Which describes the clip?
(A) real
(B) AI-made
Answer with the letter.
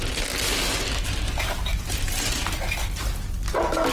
A